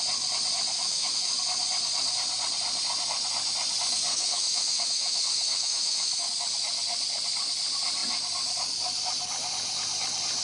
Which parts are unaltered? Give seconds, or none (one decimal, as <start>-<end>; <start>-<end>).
0.0-0.7; 1.3-4.1; 6.3-10.4